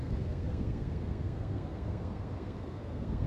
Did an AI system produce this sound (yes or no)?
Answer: yes